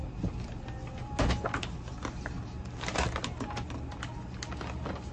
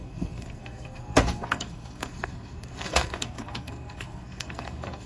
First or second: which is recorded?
first